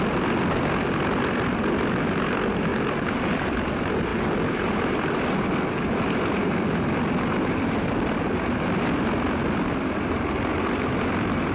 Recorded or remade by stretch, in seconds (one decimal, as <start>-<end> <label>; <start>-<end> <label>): 0.0-11.5 recorded

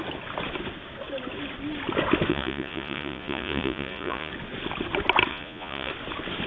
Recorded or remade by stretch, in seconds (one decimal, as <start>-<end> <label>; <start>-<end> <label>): 0.0-2.3 recorded; 2.3-4.3 remade; 4.3-5.3 recorded; 5.3-5.9 remade; 5.9-6.5 recorded